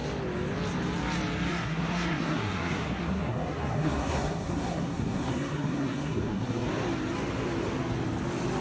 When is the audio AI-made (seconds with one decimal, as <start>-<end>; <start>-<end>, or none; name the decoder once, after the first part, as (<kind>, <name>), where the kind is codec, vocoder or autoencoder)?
1.5-6.7 (codec, SNAC)